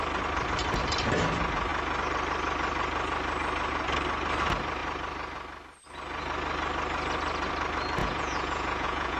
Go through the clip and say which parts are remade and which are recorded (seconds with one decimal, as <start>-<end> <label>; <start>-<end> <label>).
0.0-8.0 recorded; 8.0-9.2 remade

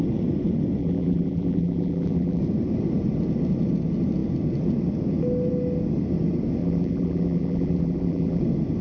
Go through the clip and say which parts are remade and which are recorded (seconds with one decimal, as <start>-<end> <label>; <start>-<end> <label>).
0.0-0.8 recorded; 0.8-2.4 remade; 2.4-6.6 recorded; 6.6-8.4 remade; 8.4-8.8 recorded

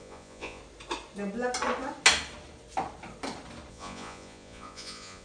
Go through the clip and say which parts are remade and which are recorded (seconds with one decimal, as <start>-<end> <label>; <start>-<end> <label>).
0.0-0.6 remade; 0.6-3.7 recorded; 3.7-5.2 remade

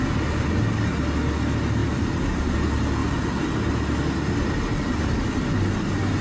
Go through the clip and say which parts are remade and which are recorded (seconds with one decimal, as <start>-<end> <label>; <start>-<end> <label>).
0.0-1.8 recorded; 1.8-2.5 remade; 2.5-4.7 recorded; 4.7-5.5 remade; 5.5-6.2 recorded

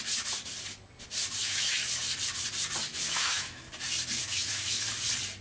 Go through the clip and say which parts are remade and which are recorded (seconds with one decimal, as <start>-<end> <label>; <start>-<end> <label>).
0.0-1.4 recorded; 1.4-1.9 remade; 1.9-2.9 recorded; 2.9-3.6 remade; 3.6-4.2 recorded; 4.2-4.8 remade; 4.8-5.4 recorded

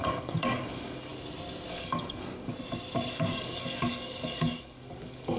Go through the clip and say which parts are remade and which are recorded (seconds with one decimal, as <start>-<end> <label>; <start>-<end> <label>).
0.0-1.1 remade; 1.1-1.7 recorded; 1.7-2.5 remade; 2.5-3.1 recorded; 3.1-5.4 remade

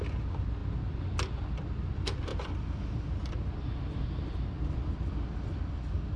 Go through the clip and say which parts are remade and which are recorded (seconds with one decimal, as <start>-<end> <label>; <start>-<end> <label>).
0.0-6.2 recorded

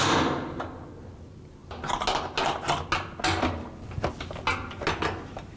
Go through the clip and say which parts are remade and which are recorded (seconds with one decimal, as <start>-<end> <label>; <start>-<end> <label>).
0.0-5.6 recorded